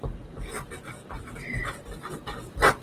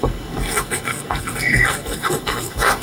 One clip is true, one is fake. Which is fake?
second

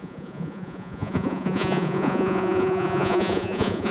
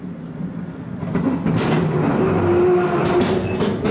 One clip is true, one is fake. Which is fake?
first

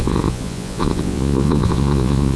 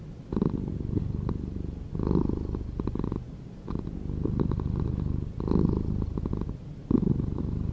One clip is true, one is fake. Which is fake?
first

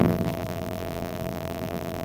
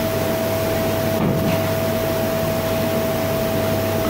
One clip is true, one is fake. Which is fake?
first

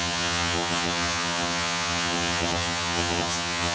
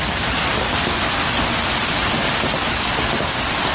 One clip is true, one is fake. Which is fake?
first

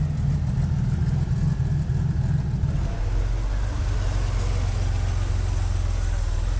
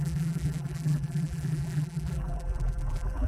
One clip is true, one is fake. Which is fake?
second